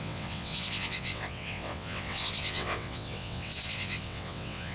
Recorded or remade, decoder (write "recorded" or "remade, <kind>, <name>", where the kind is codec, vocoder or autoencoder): remade, vocoder, WaveNeXt